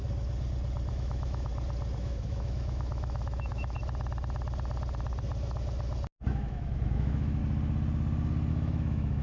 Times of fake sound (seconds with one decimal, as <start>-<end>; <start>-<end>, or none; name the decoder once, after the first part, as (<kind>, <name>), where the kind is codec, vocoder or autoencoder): 0.9-1.5 (autoencoder, DAC-VAE); 2.0-3.8; 6.3-7.4; 8.5-9.2